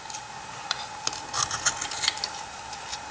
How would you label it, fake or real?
real